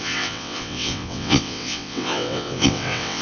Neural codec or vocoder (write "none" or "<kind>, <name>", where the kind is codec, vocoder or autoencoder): vocoder, WaveNeXt